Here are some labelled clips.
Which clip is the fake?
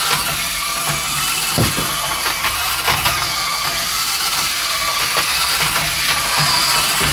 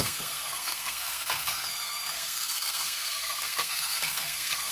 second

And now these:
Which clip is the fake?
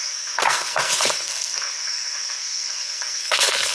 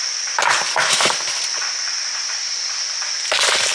first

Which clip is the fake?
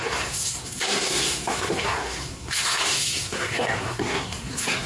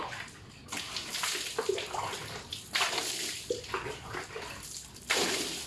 first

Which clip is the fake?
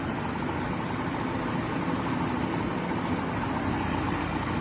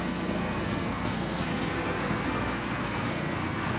second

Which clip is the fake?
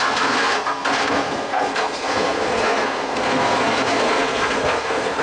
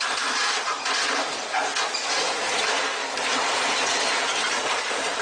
first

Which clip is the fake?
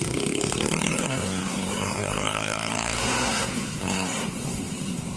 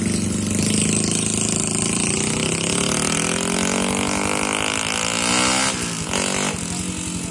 first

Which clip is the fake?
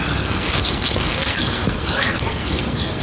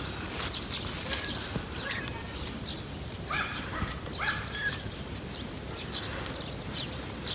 first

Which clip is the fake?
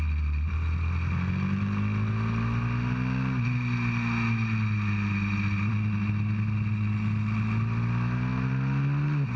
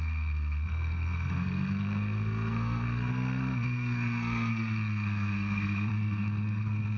second